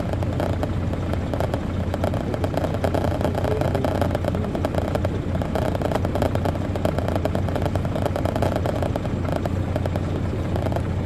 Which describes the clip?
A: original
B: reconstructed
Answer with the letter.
A